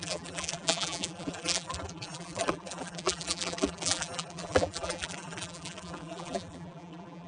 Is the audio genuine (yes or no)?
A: no